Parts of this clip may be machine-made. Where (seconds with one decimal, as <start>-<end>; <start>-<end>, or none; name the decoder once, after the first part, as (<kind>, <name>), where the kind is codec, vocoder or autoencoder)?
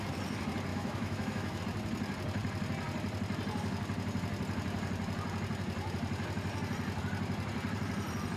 0.7-1.6 (autoencoder, DAC-VAE)